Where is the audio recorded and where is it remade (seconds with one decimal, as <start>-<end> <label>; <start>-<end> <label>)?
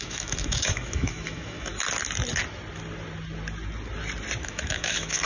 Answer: 0.0-1.7 remade; 1.7-4.4 recorded; 4.4-5.3 remade